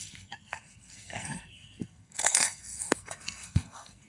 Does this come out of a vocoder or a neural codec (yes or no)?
yes